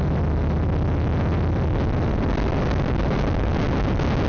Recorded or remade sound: recorded